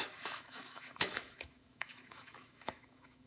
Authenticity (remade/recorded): remade